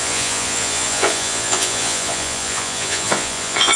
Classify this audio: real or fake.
fake